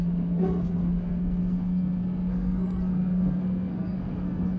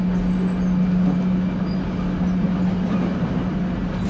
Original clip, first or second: second